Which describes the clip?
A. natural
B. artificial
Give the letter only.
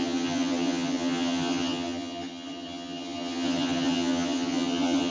B